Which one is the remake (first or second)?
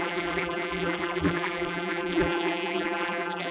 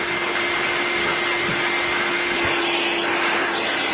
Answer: first